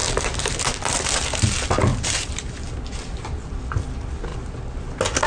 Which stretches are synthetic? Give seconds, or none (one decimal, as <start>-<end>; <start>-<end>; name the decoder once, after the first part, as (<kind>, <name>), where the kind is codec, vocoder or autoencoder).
0.0-0.6 (vocoder, BigVGAN v2); 1.9-2.6